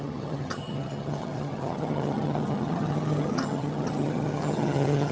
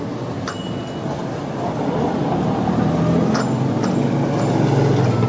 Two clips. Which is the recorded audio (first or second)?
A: second